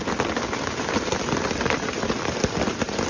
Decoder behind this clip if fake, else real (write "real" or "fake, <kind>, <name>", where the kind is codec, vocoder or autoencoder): real